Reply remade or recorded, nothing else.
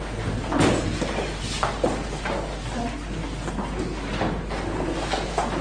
recorded